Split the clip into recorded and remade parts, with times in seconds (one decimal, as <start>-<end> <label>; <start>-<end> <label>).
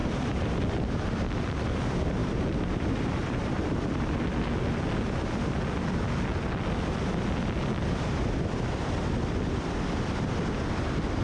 0.0-0.6 remade; 0.6-2.2 recorded; 2.2-3.6 remade; 3.6-11.2 recorded